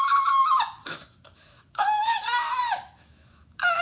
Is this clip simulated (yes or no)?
yes